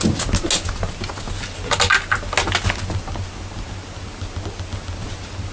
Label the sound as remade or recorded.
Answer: recorded